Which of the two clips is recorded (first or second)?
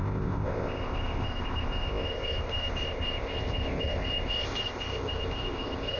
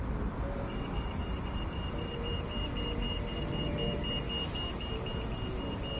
second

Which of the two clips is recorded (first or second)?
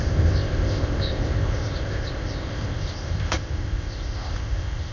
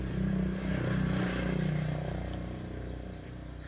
second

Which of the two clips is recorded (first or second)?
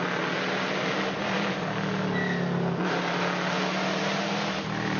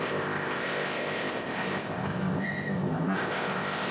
first